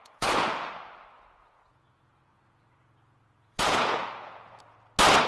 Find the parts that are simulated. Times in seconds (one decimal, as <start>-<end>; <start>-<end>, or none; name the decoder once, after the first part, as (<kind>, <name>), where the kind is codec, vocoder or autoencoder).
0.0-0.7 (vocoder, Vocos); 1.4-4.6